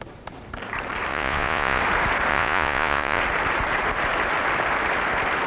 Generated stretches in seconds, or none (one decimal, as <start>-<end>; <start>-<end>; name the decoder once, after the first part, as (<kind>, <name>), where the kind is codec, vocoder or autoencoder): 1.1-1.8 (vocoder, Vocos); 2.3-3.2